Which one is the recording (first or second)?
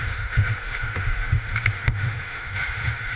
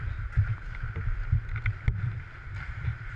second